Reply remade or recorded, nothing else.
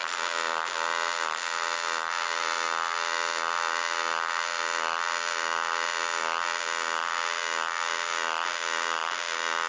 recorded